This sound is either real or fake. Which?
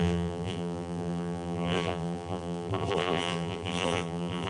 fake